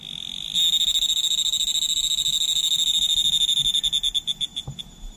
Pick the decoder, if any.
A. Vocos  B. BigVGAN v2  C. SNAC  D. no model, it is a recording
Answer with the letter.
D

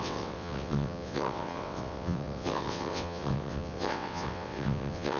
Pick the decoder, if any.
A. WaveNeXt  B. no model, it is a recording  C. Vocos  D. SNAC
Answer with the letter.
A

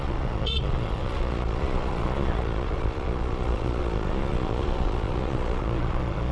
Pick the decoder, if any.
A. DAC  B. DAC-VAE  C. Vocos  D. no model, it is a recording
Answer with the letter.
C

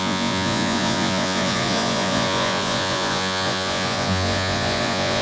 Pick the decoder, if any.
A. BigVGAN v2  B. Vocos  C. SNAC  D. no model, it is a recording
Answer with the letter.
B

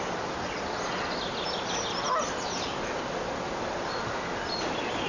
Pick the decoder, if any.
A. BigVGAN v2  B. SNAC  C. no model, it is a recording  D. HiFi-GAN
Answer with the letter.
C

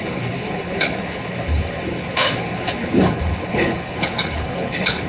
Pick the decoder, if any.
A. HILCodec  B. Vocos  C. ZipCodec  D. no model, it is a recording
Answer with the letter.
A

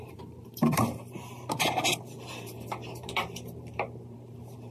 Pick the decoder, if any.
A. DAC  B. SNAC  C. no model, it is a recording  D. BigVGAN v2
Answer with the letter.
D